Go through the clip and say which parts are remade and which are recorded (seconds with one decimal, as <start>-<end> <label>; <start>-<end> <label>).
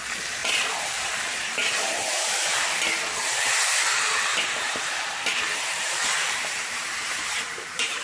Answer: 0.0-0.4 recorded; 0.4-2.3 remade; 2.3-4.3 recorded; 4.3-8.0 remade